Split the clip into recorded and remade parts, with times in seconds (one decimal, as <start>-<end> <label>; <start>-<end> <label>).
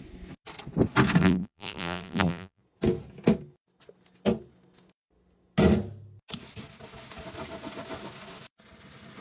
0.0-1.2 recorded; 1.2-2.6 remade; 2.6-9.2 recorded